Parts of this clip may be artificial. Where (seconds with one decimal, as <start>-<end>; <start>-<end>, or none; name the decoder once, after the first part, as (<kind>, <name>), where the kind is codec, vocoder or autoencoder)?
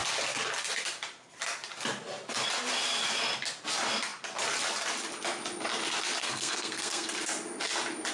6.2-7.2 (codec, SNAC)